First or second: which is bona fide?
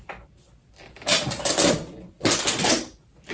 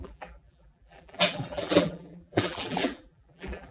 first